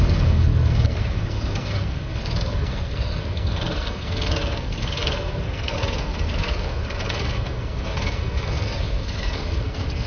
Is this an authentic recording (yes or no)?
no